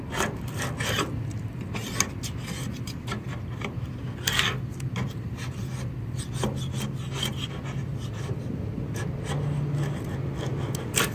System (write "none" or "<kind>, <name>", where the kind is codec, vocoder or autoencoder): none